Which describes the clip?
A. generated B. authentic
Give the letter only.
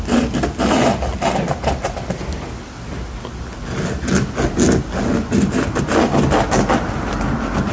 B